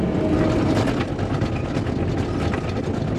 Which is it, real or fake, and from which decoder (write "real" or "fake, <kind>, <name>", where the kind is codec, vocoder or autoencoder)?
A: real